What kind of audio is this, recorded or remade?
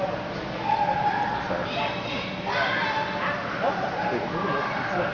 recorded